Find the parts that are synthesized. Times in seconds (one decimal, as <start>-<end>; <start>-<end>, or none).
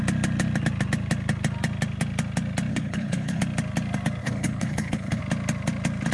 2.7-3.4; 4.2-5.2